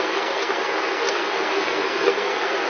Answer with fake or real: fake